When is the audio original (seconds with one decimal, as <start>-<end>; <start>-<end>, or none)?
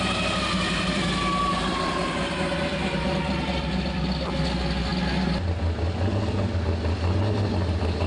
0.0-8.1